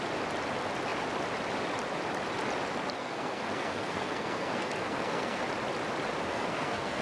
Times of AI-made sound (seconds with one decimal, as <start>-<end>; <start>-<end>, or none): 3.0-5.4; 6.3-7.0